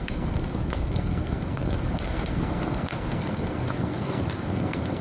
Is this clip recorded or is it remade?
remade